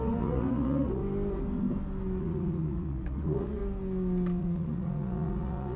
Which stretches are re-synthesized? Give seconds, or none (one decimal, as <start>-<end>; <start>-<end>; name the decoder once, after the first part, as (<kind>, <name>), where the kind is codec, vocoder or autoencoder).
0.0-1.0 (vocoder, Vocos); 2.2-3.6; 4.4-5.8